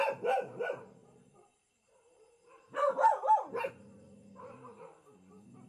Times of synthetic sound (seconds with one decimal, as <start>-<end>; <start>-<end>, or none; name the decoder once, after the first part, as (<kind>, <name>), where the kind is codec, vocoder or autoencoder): 1.0-3.7 (vocoder, BigVGAN v2)